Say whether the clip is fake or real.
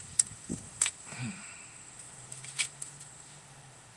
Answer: fake